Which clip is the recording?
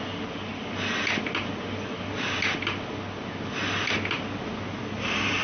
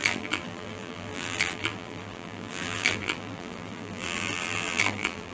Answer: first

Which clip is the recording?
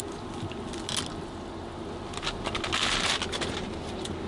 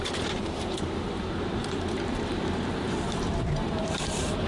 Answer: first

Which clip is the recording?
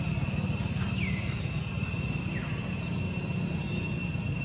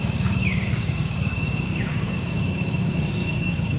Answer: first